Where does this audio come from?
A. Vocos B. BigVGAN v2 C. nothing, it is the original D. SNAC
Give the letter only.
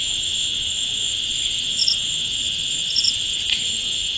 A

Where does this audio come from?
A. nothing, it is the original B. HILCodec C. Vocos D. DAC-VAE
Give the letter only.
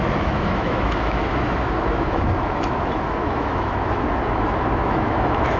D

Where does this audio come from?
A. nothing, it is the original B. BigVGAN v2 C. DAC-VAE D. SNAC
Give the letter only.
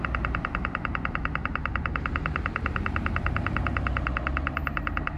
B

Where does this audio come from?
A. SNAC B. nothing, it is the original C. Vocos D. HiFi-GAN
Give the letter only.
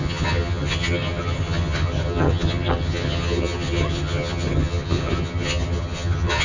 D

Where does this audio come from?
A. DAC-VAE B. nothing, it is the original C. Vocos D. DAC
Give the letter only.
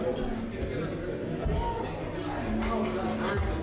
B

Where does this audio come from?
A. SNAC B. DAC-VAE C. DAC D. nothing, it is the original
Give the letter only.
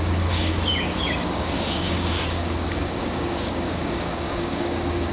C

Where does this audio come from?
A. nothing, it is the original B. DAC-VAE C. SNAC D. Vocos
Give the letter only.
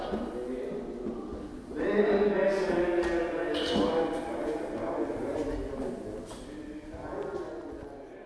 A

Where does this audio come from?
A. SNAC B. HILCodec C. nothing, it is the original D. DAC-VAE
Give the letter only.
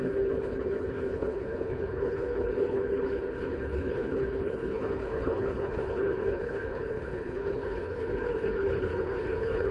B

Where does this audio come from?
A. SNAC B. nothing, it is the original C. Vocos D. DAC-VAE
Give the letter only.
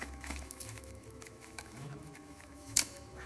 D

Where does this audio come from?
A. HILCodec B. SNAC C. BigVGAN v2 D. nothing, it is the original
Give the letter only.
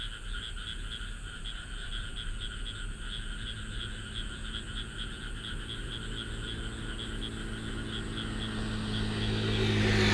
D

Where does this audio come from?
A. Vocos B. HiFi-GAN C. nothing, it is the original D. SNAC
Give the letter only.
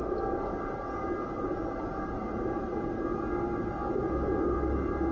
C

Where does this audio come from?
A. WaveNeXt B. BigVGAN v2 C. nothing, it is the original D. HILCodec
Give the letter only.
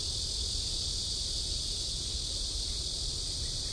C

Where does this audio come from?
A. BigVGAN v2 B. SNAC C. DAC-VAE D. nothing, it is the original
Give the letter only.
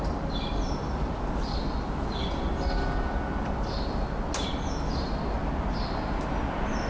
D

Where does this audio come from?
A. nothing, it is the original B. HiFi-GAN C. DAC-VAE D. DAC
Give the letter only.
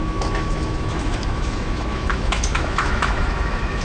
C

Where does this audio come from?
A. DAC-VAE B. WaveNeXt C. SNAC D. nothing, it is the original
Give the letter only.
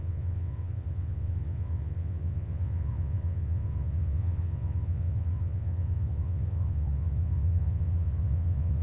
B